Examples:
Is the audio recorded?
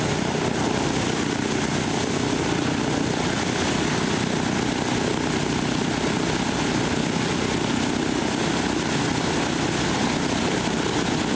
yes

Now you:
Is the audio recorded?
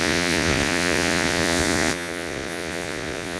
no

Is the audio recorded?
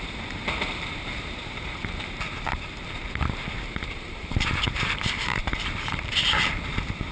no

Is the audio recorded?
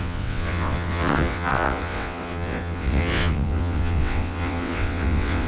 no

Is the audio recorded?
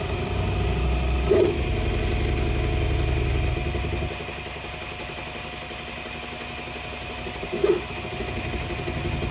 yes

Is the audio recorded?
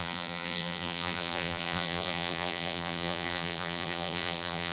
no